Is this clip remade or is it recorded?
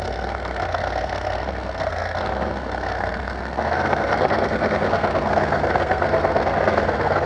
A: remade